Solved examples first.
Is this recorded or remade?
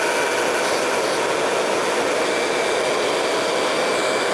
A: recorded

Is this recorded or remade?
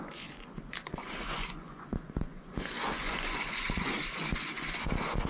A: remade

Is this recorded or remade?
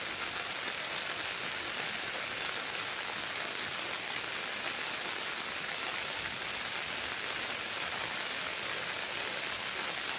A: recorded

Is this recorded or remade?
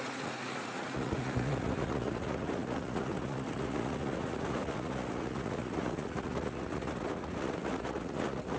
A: remade